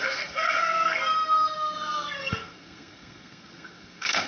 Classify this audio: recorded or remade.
remade